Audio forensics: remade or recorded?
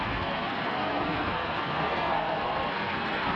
remade